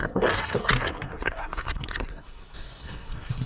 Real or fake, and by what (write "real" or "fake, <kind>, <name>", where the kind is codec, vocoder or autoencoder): fake, codec, SNAC